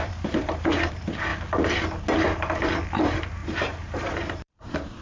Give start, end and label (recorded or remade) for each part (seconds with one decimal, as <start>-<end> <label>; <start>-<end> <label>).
0.0-1.3 remade; 1.3-3.0 recorded; 3.0-5.0 remade